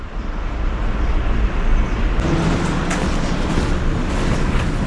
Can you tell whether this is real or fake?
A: real